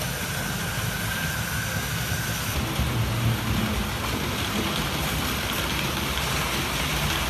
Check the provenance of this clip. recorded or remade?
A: recorded